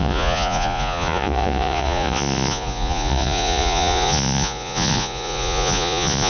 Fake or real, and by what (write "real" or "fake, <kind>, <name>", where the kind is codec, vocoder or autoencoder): fake, vocoder, Vocos